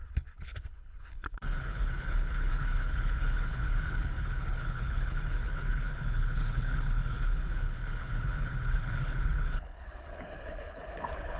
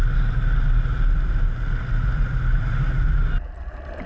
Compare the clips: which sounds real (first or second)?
second